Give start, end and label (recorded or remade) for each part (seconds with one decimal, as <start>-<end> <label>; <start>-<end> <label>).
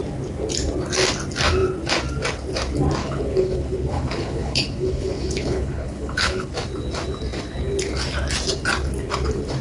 0.0-3.0 recorded; 3.0-6.5 remade; 6.5-9.6 recorded